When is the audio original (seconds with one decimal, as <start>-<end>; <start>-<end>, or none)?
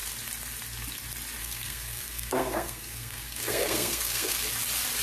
0.0-1.4; 4.4-5.0